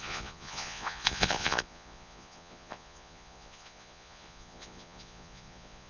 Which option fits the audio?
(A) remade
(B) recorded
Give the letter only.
A